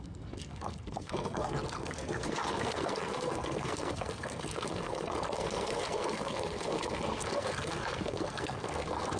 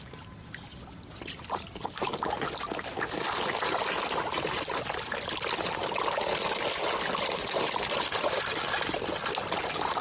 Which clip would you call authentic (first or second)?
second